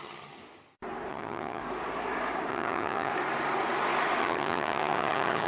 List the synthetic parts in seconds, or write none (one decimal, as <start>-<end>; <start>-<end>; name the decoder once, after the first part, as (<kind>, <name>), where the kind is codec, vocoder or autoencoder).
0.0-0.4 (vocoder, HiFi-GAN); 1.1-1.6; 2.5-3.1; 4.2-5.5